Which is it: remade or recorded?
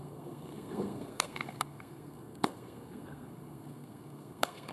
remade